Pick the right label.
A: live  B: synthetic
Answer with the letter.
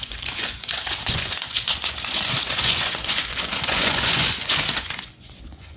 B